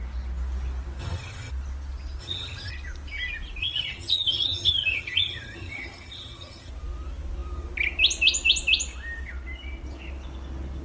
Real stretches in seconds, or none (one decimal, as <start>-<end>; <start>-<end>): 0.0-1.0; 1.5-2.2; 2.7-3.6; 6.7-10.8